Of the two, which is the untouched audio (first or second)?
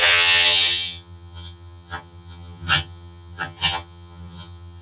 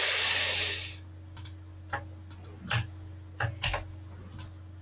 second